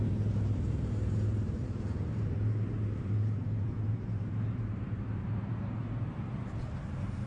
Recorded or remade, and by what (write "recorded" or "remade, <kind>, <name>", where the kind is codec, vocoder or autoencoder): remade, vocoder, BigVGAN v2